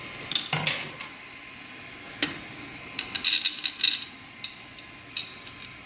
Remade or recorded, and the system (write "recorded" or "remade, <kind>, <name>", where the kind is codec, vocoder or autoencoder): recorded